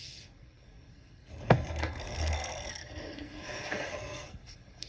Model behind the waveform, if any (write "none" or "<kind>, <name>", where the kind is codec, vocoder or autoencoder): codec, SNAC